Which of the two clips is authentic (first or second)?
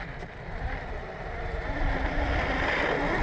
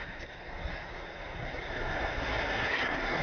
first